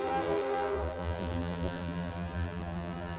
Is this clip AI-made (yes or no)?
yes